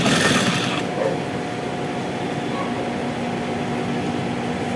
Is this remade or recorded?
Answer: recorded